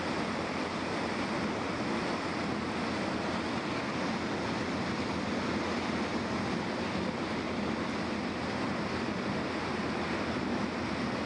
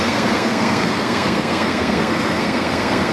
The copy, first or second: second